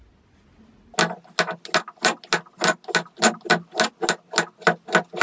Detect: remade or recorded recorded